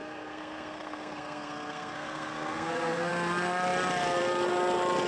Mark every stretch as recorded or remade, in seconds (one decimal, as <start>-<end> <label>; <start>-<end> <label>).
0.0-3.1 remade; 3.1-5.1 recorded